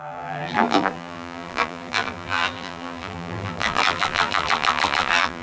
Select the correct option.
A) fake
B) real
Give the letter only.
A